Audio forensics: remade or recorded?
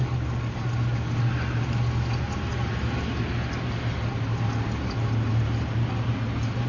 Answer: recorded